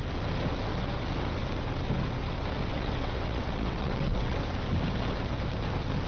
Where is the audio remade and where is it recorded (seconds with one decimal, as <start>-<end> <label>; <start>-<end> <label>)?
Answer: 0.0-2.7 recorded; 2.7-4.4 remade; 4.4-6.1 recorded